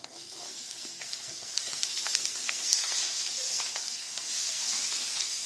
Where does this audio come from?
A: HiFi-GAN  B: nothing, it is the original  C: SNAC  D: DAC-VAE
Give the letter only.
C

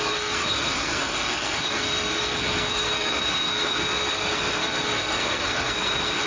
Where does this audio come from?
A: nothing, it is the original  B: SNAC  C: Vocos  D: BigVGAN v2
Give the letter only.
B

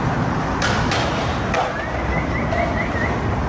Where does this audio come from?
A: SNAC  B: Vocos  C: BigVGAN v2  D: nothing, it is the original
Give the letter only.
D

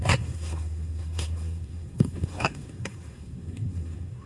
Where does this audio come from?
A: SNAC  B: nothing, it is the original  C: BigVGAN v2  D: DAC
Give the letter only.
A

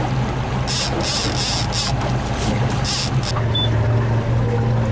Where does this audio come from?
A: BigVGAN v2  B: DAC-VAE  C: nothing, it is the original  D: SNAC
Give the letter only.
C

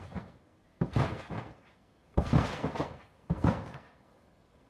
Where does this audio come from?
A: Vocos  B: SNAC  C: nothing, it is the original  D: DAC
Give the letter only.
B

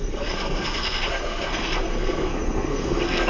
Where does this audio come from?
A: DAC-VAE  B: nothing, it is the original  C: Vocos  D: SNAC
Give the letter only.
D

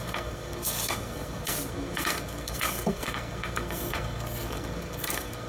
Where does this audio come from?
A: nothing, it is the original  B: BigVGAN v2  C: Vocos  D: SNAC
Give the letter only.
D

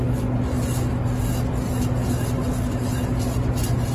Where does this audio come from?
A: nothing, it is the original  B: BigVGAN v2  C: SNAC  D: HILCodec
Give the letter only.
A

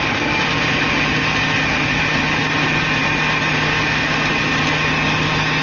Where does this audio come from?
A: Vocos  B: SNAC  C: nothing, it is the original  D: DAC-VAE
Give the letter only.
C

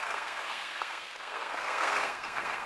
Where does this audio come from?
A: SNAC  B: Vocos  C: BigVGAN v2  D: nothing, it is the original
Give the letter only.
A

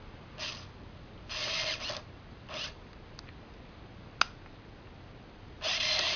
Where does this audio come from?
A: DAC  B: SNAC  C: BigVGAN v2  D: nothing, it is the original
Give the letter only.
D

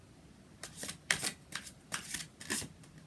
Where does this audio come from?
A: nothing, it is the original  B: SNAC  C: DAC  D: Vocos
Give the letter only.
A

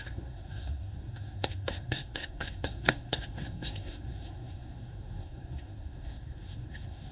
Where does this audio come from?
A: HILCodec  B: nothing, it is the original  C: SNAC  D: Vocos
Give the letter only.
C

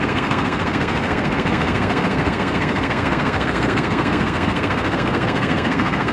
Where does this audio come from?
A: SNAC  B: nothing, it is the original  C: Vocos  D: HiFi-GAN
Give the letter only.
A